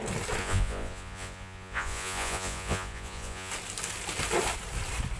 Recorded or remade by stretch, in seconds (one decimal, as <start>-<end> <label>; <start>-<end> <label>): 0.0-0.4 recorded; 0.4-3.5 remade; 3.5-5.2 recorded